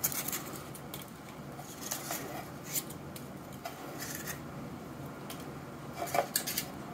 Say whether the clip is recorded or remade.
recorded